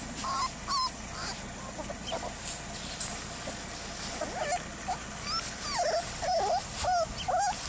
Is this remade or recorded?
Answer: recorded